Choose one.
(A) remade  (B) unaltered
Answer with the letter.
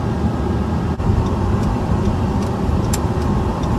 A